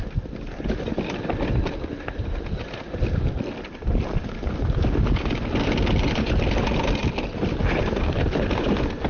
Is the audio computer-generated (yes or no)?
no